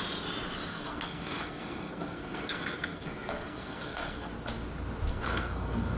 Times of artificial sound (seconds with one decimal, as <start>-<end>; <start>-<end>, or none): 0.7-4.3; 5.1-6.0